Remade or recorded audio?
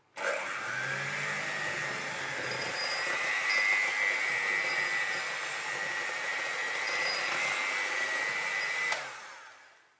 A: recorded